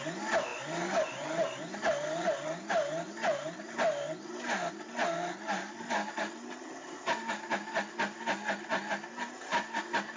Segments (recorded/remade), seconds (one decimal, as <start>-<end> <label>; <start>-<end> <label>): 0.0-10.2 recorded